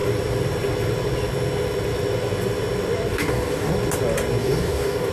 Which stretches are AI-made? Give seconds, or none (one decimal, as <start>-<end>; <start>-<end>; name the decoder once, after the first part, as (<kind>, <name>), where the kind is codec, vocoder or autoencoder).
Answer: 3.1-3.7 (codec, DAC); 4.4-5.1